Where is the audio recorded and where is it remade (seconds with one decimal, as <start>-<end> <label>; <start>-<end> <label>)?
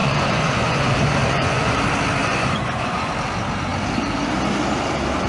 0.0-1.8 remade; 1.8-2.2 recorded; 2.2-3.1 remade; 3.1-5.3 recorded